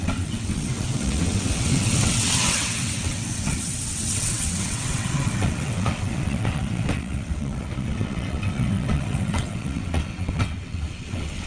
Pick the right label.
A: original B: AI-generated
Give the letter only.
B